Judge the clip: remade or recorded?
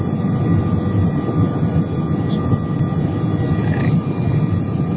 recorded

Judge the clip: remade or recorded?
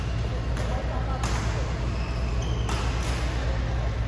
recorded